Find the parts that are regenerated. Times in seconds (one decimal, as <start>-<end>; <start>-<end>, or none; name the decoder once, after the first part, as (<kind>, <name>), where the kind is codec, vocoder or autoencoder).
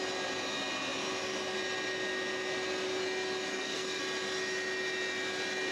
3.5-4.0 (codec, SNAC)